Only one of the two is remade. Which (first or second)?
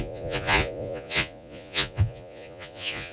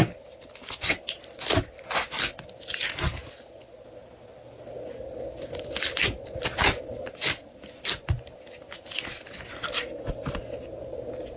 first